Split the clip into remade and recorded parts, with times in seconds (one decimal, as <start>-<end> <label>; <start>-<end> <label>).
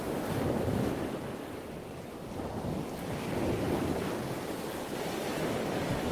0.0-4.7 recorded; 4.7-6.1 remade